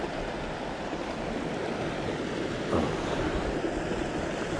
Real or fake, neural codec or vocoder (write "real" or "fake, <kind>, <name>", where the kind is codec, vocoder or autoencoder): real